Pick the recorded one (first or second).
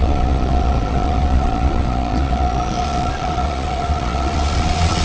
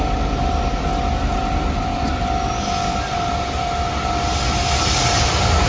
second